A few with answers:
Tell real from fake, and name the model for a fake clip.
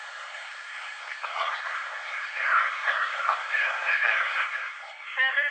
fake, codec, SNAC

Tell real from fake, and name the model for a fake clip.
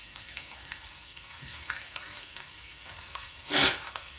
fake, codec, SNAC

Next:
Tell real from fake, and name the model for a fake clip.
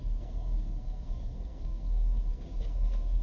fake, codec, SNAC